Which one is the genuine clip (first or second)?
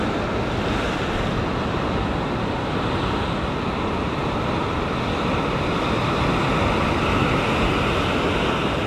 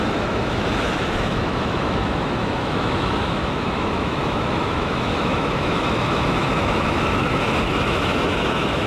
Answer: first